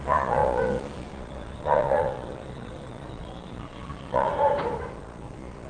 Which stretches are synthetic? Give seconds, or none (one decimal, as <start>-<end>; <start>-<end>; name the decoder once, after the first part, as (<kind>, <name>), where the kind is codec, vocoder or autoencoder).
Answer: 0.0-4.3 (vocoder, Vocos); 4.9-5.7